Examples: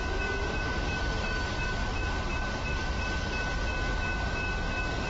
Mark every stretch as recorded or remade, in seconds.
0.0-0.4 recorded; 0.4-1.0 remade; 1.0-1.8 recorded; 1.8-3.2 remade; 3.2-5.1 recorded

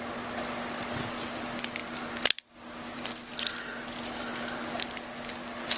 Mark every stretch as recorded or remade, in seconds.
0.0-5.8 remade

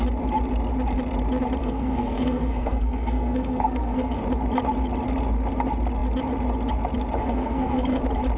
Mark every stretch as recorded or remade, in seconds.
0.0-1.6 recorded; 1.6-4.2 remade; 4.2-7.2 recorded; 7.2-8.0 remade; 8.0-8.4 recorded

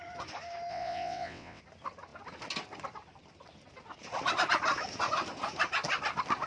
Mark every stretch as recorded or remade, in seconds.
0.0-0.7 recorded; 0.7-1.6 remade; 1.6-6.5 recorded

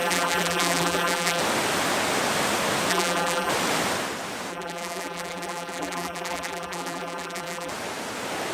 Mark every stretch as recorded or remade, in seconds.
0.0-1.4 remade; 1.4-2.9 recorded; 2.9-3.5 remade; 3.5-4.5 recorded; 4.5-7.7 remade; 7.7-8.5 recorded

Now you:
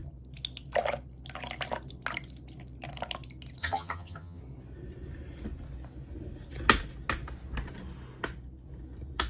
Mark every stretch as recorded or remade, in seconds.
0.0-3.6 recorded; 3.6-4.4 remade; 4.4-9.3 recorded

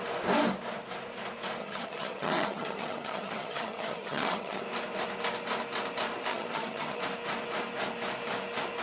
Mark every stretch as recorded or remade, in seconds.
0.0-1.6 recorded; 1.6-4.6 remade; 4.6-6.3 recorded; 6.3-7.0 remade; 7.0-8.8 recorded

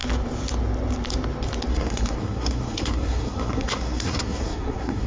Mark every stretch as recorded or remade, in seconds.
0.0-1.7 recorded; 1.7-5.1 remade